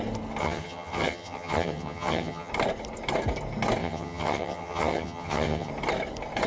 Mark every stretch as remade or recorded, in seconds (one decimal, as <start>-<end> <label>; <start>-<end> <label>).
0.0-0.4 recorded; 0.4-2.5 remade; 2.5-3.8 recorded; 3.8-5.7 remade; 5.7-6.5 recorded